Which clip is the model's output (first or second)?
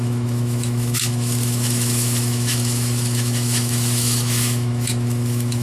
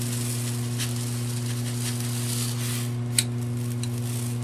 first